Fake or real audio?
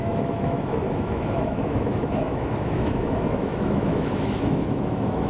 fake